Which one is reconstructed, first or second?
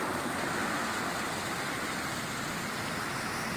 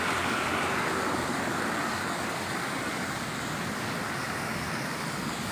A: second